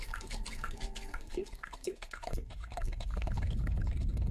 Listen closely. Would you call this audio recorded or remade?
remade